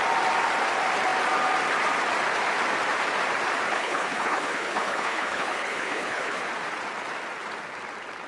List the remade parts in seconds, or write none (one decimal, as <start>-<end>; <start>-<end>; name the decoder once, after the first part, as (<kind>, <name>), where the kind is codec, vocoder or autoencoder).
3.7-6.4 (codec, HILCodec)